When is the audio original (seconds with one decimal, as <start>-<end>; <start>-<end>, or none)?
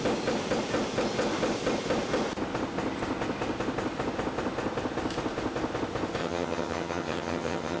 0.0-6.2